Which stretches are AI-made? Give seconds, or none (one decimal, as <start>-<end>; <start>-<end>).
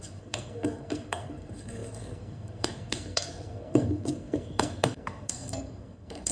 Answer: 0.0-6.3